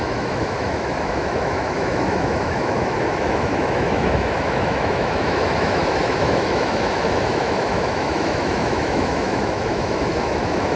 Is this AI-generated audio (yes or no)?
yes